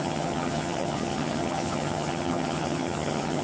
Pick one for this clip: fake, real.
fake